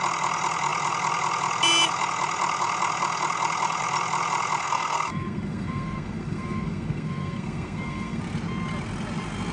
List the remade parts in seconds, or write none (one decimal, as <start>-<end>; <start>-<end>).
4.6-8.2